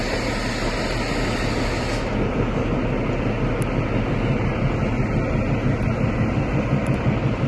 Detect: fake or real real